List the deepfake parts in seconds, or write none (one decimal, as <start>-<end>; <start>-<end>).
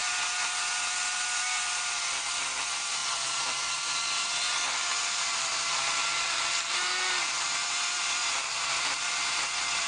none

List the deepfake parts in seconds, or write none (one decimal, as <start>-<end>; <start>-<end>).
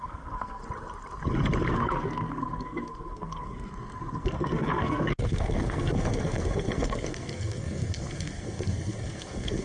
0.0-0.6; 1.7-9.6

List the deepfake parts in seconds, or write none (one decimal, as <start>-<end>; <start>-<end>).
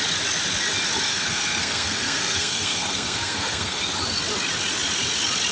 1.1-3.8